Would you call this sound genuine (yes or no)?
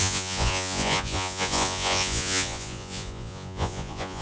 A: no